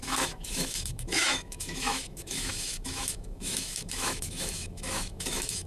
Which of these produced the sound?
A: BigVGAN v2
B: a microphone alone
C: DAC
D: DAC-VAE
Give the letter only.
D